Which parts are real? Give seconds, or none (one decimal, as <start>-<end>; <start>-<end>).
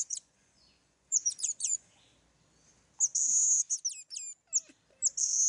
2.1-5.5